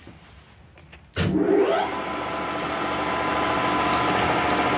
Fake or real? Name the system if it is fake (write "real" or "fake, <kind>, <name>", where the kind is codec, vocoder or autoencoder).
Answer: real